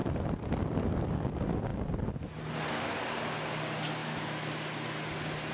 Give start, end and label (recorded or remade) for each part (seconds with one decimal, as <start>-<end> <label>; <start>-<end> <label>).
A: 0.0-4.0 recorded; 4.0-4.5 remade; 4.5-5.5 recorded